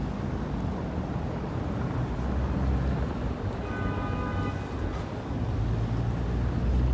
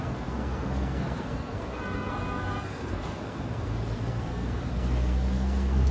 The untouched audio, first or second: first